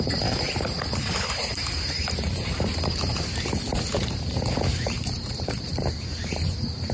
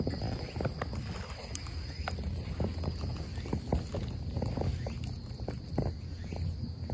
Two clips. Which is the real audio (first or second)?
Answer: second